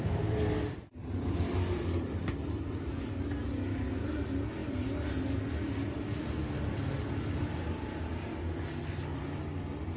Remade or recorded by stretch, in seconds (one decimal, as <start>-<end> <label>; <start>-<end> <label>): 0.0-10.0 recorded